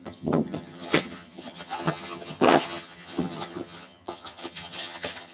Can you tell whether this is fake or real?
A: fake